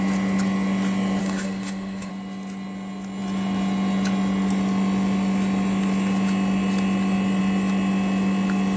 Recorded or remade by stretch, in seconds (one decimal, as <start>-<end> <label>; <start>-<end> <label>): 0.0-1.2 recorded; 1.2-2.1 remade; 2.1-8.8 recorded